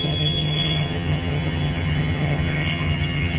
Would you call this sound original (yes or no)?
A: no